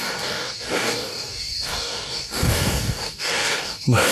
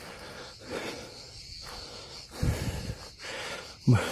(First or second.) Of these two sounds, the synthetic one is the first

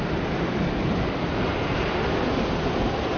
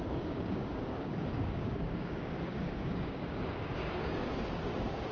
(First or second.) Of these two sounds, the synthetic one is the second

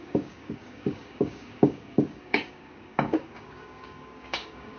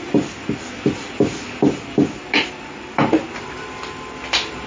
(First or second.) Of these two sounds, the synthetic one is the first